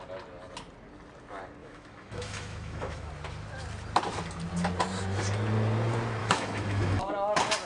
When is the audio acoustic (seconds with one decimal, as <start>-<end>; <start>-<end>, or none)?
0.0-1.6; 3.1-6.2; 7.1-7.6